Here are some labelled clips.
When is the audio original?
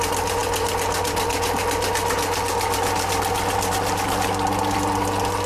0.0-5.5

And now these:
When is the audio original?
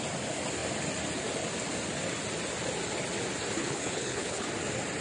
0.0-3.6; 4.5-5.0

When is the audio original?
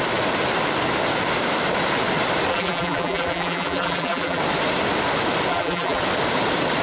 0.0-2.5; 4.4-5.5; 6.0-6.8